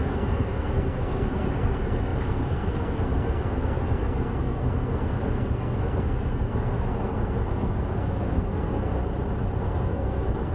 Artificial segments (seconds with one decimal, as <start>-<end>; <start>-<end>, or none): 0.0-9.0; 9.6-10.5